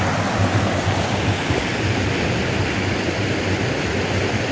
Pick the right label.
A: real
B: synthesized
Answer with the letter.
A